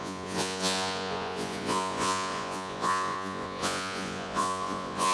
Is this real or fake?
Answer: fake